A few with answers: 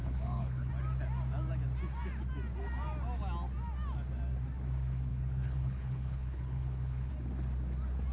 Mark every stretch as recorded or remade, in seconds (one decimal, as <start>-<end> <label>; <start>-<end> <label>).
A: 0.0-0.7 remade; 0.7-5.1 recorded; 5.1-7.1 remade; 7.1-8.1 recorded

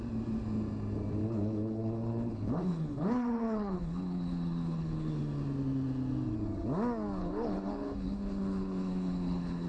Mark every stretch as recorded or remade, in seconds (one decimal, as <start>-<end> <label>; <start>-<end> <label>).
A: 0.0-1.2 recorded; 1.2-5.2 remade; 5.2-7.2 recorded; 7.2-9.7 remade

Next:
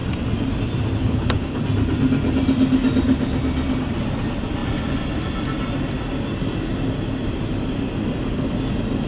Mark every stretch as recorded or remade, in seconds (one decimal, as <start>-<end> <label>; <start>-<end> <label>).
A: 0.0-1.0 recorded; 1.0-1.6 remade; 1.6-9.1 recorded